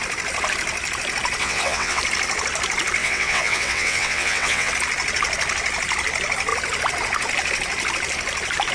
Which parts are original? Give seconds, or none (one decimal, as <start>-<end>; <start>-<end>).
0.0-1.4; 2.0-3.0; 4.7-8.7